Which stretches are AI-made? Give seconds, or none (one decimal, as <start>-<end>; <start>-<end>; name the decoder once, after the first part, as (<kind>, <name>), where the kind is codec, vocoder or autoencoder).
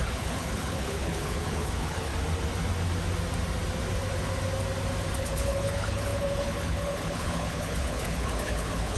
0.0-2.1 (codec, HILCodec); 5.2-9.0